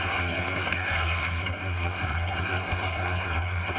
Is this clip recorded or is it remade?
remade